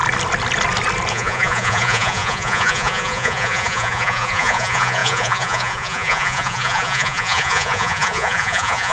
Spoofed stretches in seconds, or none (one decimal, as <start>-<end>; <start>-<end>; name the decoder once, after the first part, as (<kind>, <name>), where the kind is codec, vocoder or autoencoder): 1.1-8.9 (vocoder, Vocos)